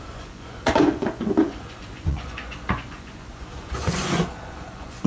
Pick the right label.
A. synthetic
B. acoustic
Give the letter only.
A